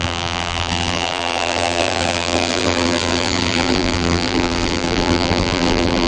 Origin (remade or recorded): remade